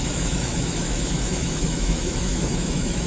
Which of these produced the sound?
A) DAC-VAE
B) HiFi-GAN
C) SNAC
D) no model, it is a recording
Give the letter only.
A